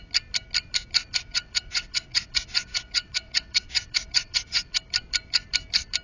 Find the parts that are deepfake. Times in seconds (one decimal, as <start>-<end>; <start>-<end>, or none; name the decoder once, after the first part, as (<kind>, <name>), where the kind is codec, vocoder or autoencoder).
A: 1.2-4.8 (vocoder, WaveNeXt)